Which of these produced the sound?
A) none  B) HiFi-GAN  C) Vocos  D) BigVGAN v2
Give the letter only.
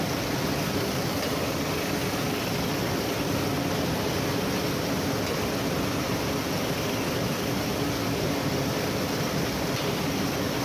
A